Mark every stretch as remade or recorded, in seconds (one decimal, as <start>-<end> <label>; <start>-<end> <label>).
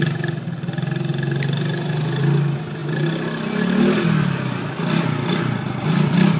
0.0-6.4 recorded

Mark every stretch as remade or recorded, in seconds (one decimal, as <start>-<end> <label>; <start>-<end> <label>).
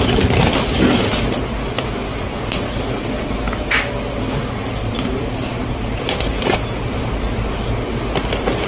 0.0-8.7 recorded